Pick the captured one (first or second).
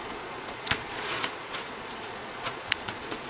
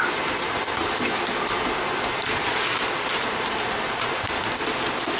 second